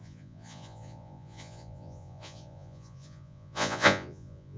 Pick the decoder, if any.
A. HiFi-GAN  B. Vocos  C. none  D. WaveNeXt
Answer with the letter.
B